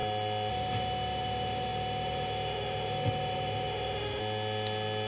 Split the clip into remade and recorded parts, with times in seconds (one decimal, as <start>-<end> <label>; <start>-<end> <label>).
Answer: 0.0-0.5 recorded; 0.5-4.2 remade; 4.2-5.1 recorded